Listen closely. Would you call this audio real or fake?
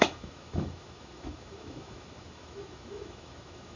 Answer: fake